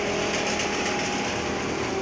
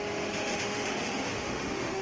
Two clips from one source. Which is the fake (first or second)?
second